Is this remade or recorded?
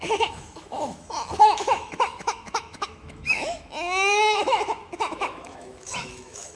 remade